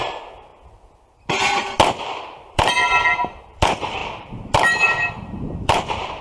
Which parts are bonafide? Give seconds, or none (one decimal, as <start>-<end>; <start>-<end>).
0.5-2.0; 2.8-3.5